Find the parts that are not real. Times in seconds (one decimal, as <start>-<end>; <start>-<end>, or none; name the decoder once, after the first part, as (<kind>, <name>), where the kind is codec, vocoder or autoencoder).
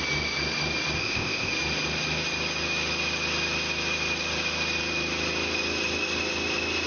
1.0-1.5 (codec, ZipCodec)